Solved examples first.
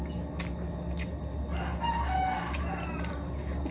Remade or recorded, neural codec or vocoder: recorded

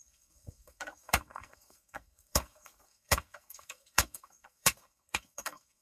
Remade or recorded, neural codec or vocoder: remade, codec, SNAC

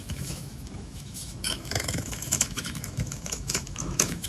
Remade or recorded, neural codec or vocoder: remade, autoencoder, DAC-VAE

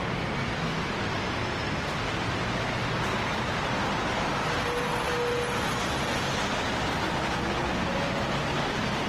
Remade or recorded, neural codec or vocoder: recorded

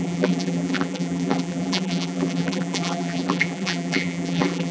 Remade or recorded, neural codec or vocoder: remade, vocoder, BigVGAN v2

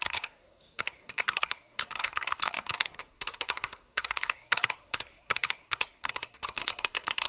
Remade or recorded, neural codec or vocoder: remade, codec, SNAC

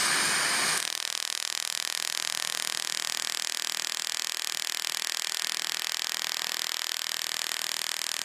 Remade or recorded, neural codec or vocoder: recorded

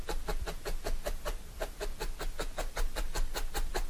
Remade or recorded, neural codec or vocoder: recorded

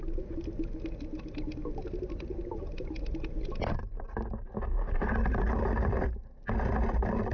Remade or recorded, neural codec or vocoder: recorded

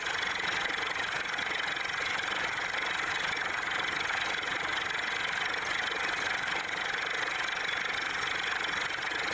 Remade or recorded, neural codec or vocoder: recorded